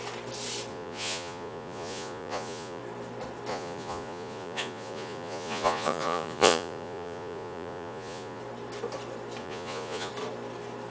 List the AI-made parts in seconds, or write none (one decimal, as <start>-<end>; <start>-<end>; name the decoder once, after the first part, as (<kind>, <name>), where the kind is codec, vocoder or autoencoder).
0.7-2.8 (vocoder, Vocos); 3.5-8.4; 9.4-10.1